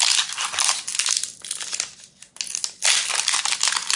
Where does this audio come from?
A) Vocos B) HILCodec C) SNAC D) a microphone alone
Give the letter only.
D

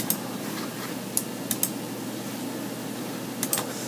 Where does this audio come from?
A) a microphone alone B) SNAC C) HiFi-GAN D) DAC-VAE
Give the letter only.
A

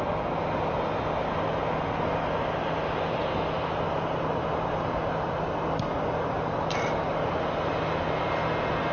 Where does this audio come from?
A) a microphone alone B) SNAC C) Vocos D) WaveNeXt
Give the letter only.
A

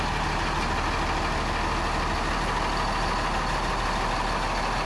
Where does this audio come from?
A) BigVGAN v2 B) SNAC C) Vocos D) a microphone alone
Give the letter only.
D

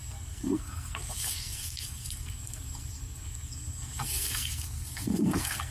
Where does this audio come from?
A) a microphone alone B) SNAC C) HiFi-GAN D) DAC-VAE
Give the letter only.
B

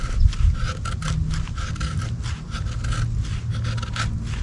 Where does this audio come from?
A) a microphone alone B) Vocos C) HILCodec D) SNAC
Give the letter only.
A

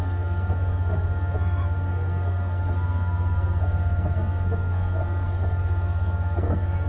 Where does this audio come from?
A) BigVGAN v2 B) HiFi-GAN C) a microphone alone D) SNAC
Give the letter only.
D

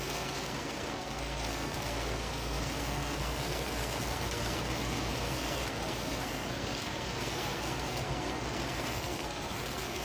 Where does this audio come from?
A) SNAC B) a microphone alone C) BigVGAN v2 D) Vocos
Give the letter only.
A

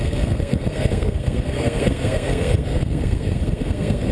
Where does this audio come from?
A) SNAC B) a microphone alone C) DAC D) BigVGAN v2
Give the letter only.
A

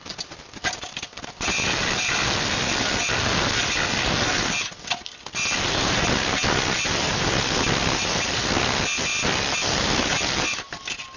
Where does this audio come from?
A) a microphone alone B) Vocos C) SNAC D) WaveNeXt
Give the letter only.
A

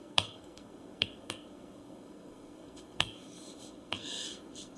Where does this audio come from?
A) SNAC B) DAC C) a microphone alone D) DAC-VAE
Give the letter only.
A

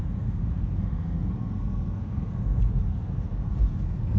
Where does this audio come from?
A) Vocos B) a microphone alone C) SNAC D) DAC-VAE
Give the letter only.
C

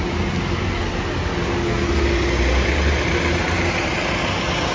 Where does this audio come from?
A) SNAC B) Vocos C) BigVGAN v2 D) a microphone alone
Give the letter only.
D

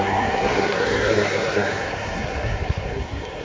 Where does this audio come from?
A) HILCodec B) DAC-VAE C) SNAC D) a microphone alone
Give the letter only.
C